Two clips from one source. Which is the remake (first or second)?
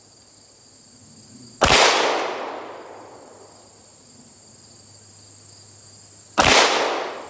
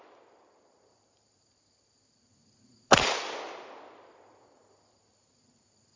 second